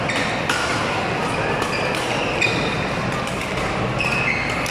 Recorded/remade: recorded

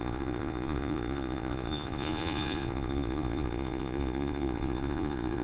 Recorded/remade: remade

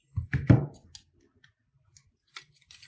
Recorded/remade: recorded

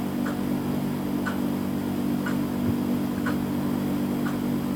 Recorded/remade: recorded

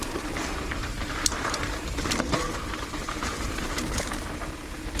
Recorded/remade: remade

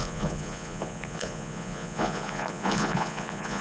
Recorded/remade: remade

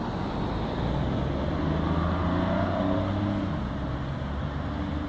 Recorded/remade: recorded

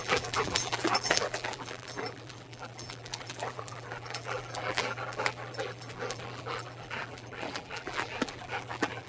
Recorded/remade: remade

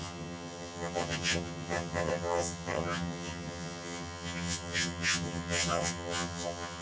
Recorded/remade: remade